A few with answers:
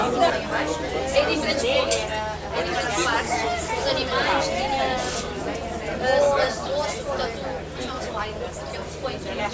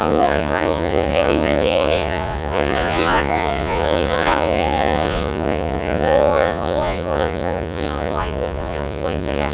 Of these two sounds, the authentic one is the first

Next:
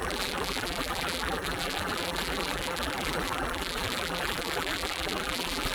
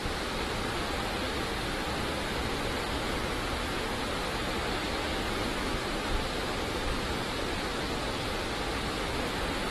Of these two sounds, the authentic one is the second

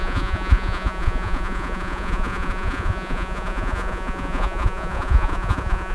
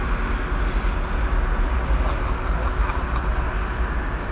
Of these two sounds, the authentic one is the second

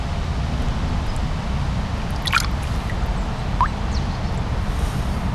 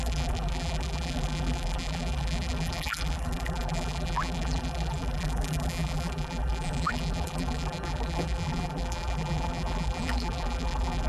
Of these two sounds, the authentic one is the first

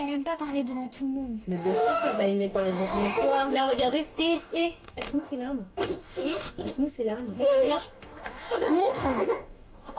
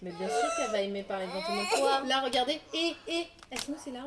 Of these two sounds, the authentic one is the second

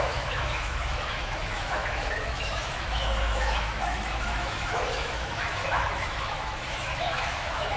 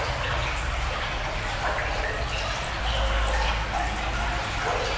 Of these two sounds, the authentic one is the second